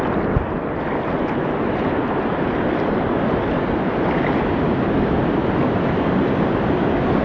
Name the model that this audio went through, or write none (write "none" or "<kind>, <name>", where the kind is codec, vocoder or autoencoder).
none